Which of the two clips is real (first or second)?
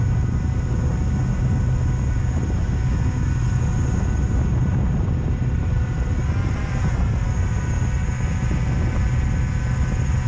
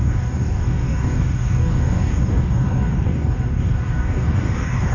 first